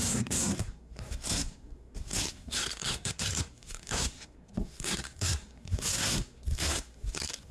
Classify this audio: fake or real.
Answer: fake